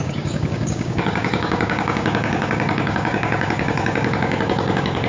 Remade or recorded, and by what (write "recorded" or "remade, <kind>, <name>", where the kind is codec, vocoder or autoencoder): remade, codec, DAC